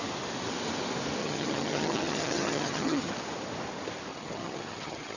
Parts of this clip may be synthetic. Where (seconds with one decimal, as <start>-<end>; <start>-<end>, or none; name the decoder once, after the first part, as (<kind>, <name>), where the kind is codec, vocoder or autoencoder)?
1.2-3.1 (vocoder, HiFi-GAN); 4.1-5.2